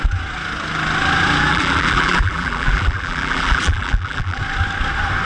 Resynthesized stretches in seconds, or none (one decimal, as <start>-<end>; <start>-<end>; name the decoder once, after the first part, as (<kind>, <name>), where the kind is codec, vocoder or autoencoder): 1.5-4.4 (vocoder, BigVGAN v2)